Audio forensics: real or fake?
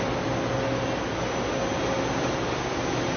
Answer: real